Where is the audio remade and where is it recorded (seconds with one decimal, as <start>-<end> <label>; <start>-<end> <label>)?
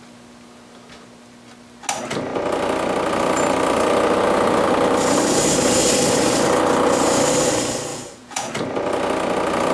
0.0-7.9 recorded; 7.9-8.5 remade; 8.5-9.7 recorded